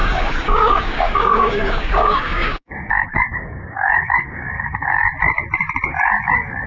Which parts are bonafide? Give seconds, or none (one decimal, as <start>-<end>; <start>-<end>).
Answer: 5.0-6.7